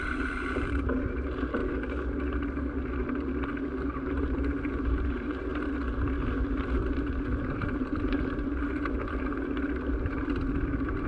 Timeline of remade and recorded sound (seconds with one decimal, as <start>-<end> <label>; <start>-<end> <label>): 0.0-1.6 remade; 1.6-3.9 recorded; 3.9-5.5 remade; 5.5-7.5 recorded; 7.5-11.1 remade